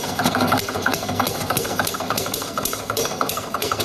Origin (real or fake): fake